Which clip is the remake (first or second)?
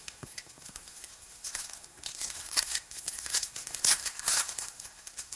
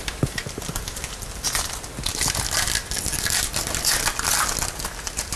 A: first